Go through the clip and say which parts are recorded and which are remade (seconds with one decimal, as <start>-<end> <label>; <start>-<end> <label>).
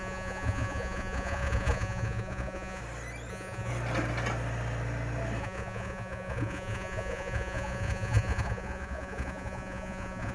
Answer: 0.0-2.8 remade; 2.8-3.3 recorded; 3.3-3.7 remade; 3.7-5.4 recorded; 5.4-10.3 remade